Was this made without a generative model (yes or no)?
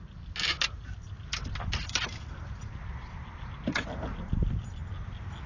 yes